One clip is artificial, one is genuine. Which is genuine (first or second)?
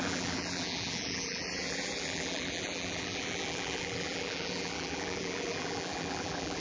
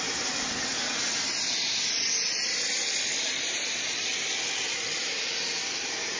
second